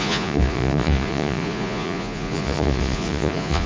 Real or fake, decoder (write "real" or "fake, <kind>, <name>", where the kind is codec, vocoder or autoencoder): fake, vocoder, Vocos